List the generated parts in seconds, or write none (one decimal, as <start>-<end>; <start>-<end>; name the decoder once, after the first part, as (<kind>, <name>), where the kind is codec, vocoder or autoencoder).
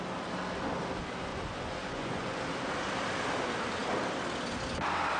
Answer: 1.3-2.4 (vocoder, Vocos)